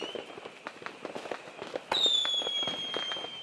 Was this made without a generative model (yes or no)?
yes